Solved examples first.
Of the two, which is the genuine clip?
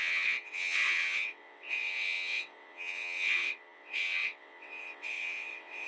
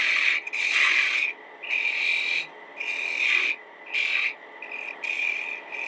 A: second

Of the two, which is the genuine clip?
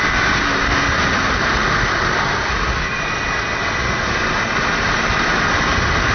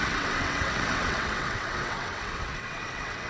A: first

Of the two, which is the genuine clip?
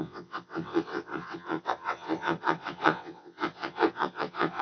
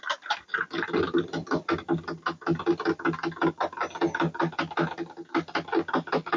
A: second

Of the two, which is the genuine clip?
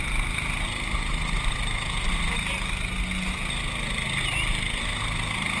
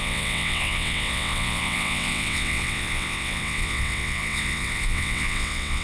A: first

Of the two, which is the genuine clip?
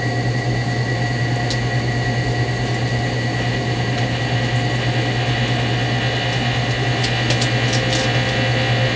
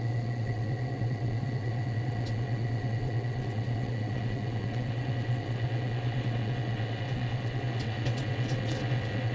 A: first